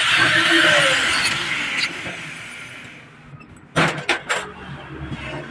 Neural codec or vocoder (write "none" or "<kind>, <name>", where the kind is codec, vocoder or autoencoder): none